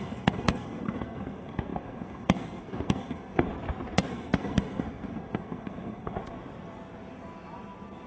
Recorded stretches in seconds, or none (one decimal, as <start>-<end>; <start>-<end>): 3.5-4.1; 6.2-8.1